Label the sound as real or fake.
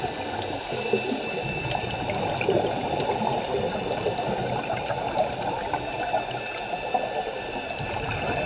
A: real